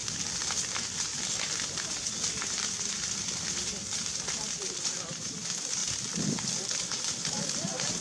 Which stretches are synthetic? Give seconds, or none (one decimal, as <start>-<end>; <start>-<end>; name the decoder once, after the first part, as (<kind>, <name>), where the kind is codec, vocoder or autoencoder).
none